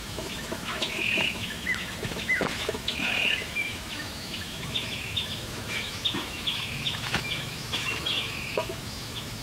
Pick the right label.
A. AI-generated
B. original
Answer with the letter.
A